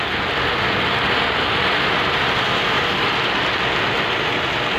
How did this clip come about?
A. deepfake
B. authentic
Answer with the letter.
B